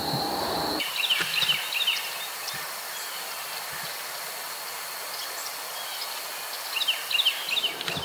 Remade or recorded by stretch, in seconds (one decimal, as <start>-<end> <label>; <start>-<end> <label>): 0.0-1.0 remade; 1.0-8.0 recorded